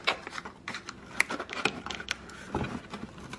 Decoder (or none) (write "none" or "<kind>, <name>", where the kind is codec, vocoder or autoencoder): none